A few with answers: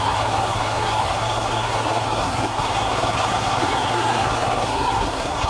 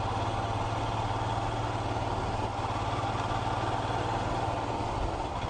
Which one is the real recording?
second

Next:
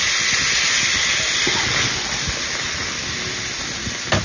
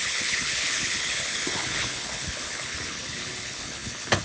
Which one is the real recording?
first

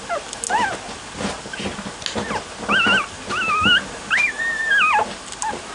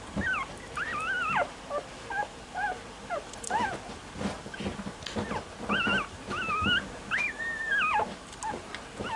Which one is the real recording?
first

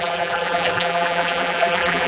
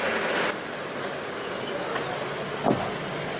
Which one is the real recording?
second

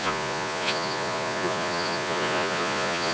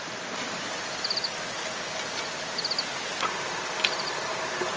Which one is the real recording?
second